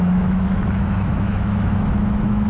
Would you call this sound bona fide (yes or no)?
no